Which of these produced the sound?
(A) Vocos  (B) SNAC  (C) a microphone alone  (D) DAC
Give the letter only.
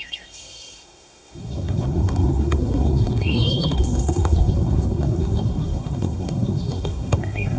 B